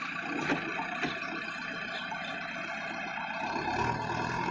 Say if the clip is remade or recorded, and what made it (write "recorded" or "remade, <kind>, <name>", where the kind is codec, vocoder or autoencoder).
recorded